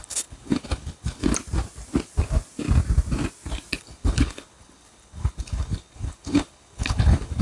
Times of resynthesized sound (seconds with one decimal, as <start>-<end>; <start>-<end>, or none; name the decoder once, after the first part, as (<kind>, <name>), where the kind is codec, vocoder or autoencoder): 0.0-1.2 (codec, HILCodec); 3.8-7.4